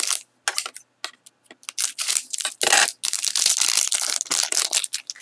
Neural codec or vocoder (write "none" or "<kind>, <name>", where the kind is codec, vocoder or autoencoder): none